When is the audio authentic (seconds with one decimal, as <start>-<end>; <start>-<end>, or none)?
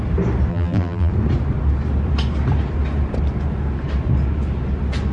0.0-0.5; 1.1-5.1